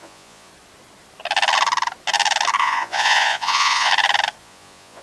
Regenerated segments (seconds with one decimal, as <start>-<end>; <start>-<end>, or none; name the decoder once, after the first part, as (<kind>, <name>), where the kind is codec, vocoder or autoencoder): 0.0-0.5 (vocoder, Vocos); 2.6-3.9; 4.4-5.0